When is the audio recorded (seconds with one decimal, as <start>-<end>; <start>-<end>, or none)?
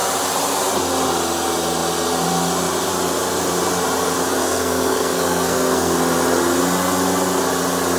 0.0-4.4; 6.0-8.0